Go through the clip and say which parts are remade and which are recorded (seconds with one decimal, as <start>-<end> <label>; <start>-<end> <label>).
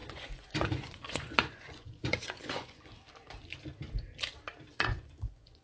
0.0-2.9 remade; 2.9-4.7 recorded; 4.7-5.6 remade